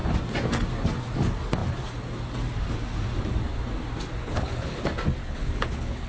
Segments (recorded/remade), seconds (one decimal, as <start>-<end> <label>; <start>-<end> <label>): 0.0-4.2 recorded; 4.2-4.8 remade; 4.8-5.2 recorded; 5.2-6.1 remade